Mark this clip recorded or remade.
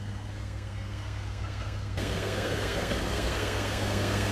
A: remade